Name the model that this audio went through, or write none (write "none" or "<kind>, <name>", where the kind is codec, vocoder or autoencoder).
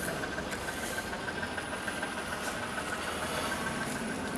none